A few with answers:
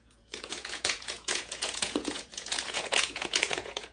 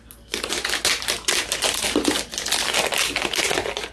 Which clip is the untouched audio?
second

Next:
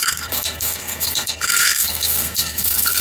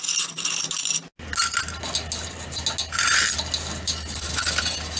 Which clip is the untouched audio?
second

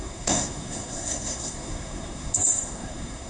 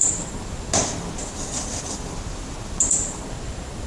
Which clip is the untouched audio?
second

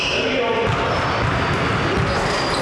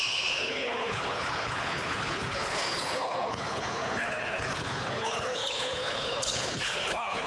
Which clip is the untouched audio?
first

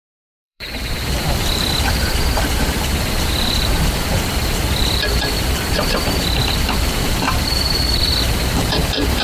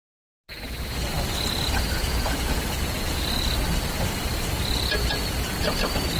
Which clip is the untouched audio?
second